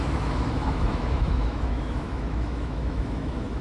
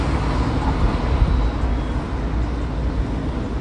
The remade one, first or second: first